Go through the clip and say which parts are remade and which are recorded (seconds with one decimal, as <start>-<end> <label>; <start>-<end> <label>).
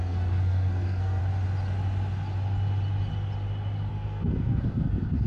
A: 0.0-1.2 remade; 1.2-3.9 recorded; 3.9-5.3 remade